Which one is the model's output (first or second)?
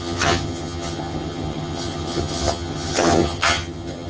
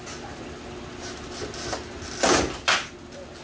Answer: first